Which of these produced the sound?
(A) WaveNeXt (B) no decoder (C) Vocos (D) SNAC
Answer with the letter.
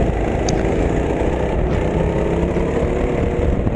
B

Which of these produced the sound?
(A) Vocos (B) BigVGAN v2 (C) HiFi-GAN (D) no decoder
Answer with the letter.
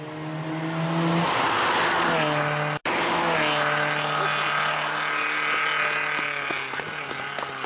D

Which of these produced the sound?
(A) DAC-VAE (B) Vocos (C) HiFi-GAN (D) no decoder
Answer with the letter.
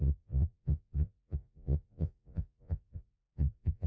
B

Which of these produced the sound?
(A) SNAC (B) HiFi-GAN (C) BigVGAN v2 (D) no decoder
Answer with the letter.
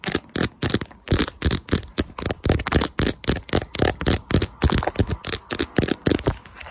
D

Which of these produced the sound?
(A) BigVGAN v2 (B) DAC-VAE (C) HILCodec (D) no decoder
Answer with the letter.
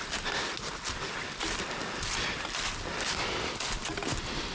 D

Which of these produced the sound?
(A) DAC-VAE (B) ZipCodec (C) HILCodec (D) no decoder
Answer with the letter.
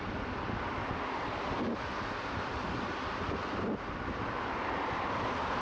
D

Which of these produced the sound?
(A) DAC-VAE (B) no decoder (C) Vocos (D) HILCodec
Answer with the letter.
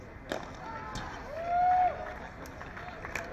B